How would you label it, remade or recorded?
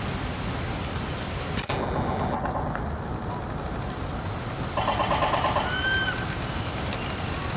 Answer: recorded